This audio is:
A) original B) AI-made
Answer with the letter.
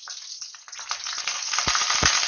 A